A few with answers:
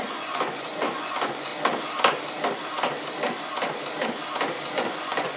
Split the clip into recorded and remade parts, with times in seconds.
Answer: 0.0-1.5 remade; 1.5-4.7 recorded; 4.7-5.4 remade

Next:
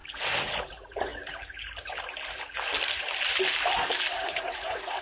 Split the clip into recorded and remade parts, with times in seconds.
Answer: 0.0-0.6 recorded; 0.6-1.1 remade; 1.1-4.1 recorded; 4.1-5.0 remade

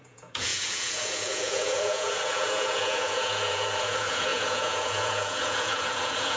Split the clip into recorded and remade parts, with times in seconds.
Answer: 0.0-6.4 remade

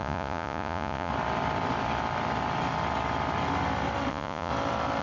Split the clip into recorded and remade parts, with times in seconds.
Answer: 0.0-1.1 remade; 1.1-4.1 recorded; 4.1-4.5 remade; 4.5-5.0 recorded

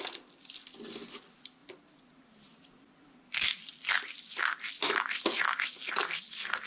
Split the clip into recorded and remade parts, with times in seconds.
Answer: 0.0-6.7 recorded

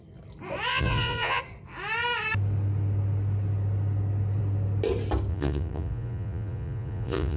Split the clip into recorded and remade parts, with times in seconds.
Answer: 0.0-0.7 recorded; 0.7-1.4 remade; 1.4-5.3 recorded; 5.3-7.4 remade

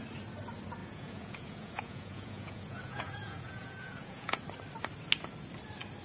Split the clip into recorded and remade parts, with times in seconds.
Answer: 0.0-0.8 recorded; 0.8-4.4 remade; 4.4-6.0 recorded

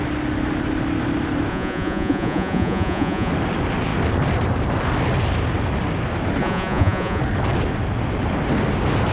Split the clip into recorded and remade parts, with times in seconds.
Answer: 0.0-1.5 recorded; 1.5-3.3 remade; 3.3-6.4 recorded; 6.4-7.2 remade; 7.2-9.1 recorded